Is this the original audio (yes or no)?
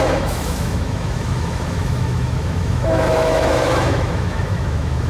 no